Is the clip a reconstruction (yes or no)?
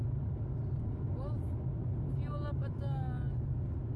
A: no